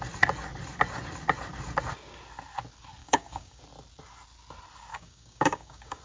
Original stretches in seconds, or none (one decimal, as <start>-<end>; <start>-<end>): 0.0-3.0; 3.6-4.9

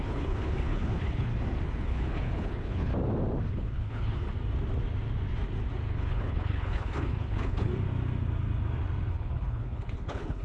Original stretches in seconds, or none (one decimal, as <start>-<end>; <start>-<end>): 1.3-1.8; 2.9-3.5; 4.3-5.9; 7.7-9.1

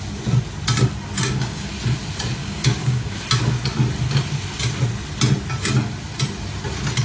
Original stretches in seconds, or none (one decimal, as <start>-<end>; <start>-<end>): 0.0-1.2; 1.7-2.4; 3.2-7.0

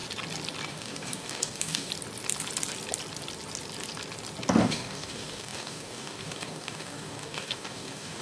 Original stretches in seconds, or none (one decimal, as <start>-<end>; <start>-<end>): 0.0-0.7; 1.9-4.6

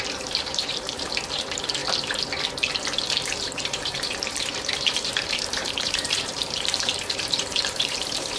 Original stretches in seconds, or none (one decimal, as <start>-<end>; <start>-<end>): 1.8-3.1

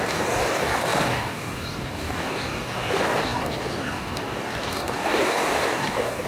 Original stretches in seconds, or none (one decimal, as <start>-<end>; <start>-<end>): none

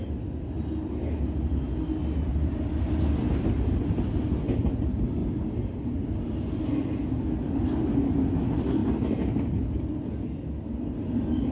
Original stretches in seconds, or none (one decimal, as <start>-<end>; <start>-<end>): 0.0-11.5

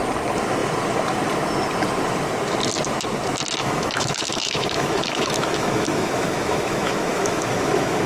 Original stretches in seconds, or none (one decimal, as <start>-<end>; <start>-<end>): 0.0-3.6